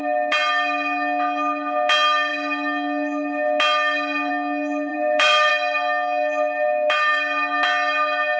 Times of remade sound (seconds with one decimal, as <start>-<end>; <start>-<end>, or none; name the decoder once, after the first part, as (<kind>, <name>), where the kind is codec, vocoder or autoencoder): 4.9-5.5 (vocoder, BigVGAN v2)